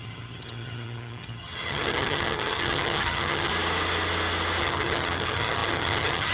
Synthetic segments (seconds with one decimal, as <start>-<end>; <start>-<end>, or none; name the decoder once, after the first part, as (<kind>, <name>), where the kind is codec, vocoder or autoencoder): 0.0-3.5 (vocoder, HiFi-GAN); 4.6-6.3